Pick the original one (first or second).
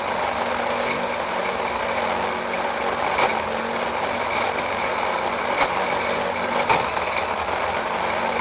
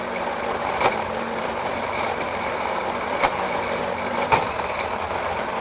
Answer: first